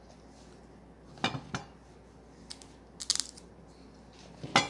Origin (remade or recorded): recorded